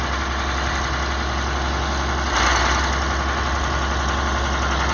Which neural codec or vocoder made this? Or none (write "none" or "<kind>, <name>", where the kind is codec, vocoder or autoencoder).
none